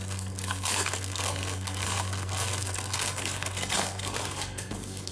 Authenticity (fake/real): fake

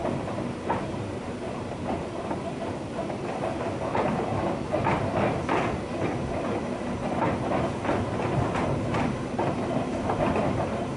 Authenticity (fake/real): real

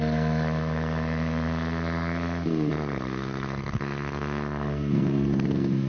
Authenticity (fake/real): fake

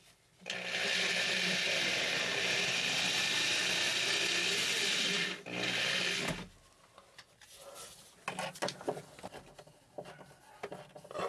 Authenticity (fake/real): real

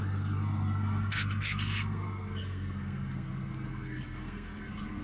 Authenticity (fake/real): fake